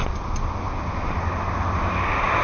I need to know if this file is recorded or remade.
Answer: recorded